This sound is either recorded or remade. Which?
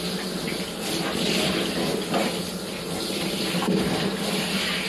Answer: recorded